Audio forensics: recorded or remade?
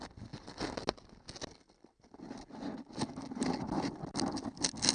recorded